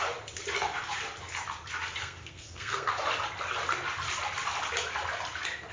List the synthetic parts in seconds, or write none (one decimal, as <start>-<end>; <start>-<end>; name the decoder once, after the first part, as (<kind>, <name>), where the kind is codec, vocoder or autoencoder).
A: 2.0-2.9 (codec, SNAC)